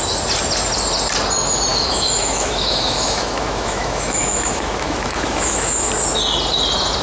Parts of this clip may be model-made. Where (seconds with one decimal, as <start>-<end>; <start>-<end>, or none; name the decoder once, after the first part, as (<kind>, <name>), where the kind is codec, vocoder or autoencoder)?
1.7-5.9 (autoencoder, DAC-VAE)